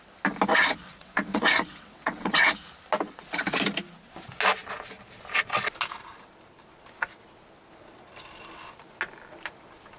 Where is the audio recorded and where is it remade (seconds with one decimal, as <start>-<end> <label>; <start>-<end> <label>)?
0.0-0.5 recorded; 0.5-2.5 remade; 2.5-10.0 recorded